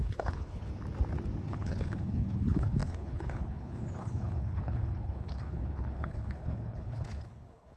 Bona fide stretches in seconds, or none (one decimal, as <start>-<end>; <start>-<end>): 0.7-1.5